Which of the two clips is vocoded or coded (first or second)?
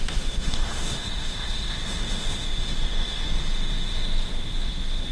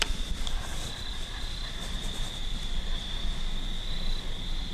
first